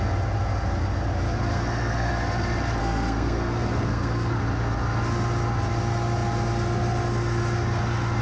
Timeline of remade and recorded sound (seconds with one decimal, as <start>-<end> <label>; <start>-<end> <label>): 0.0-1.5 recorded; 1.5-2.1 remade; 2.1-2.8 recorded; 2.8-4.4 remade; 4.4-8.2 recorded